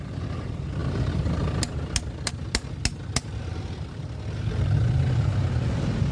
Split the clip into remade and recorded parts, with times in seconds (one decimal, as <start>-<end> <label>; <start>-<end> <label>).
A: 0.0-6.1 recorded

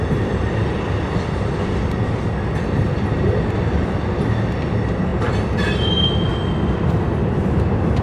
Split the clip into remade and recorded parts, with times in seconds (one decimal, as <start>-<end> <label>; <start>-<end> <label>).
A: 0.0-8.0 recorded

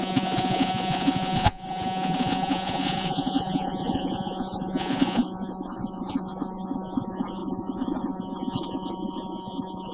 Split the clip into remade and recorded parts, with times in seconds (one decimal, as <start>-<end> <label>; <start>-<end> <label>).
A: 0.0-9.9 remade